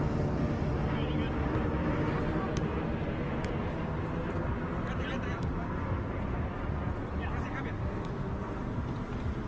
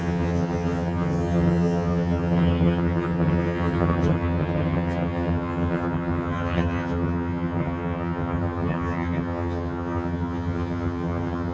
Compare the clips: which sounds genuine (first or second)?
first